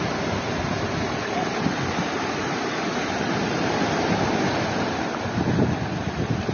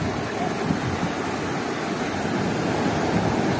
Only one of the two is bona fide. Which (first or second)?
second